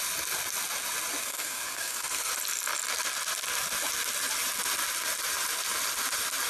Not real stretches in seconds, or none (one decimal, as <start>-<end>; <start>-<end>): 1.2-2.3